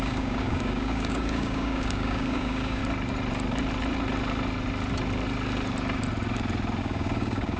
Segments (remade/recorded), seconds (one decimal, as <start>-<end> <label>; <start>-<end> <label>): 0.0-2.8 remade; 2.8-6.8 recorded; 6.8-7.6 remade